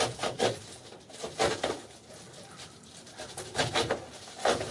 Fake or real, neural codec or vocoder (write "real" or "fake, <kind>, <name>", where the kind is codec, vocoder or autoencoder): real